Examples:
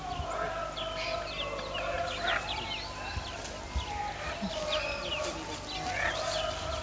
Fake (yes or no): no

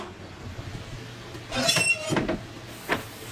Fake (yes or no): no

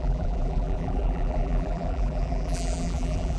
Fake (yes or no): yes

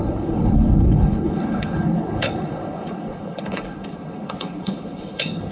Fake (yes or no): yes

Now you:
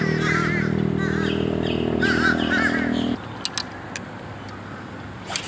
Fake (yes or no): no